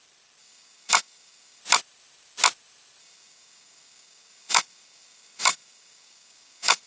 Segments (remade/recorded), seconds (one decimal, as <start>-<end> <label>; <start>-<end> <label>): 0.0-0.4 recorded; 0.4-1.6 remade; 1.6-3.0 recorded; 3.0-6.9 remade